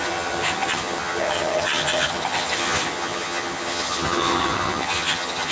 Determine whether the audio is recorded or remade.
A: remade